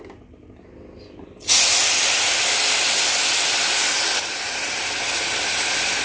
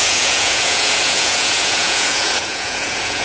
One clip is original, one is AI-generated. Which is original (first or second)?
first